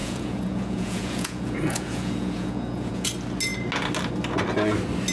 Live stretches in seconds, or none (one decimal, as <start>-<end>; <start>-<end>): 3.1-5.1